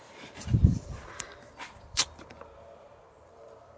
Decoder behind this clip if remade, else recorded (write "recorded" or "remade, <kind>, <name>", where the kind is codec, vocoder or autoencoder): remade, vocoder, BigVGAN v2